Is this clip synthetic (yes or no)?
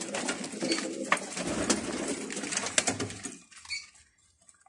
no